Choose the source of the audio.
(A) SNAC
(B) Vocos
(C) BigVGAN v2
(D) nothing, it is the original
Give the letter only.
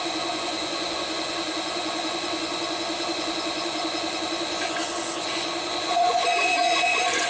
B